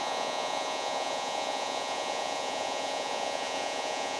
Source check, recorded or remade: remade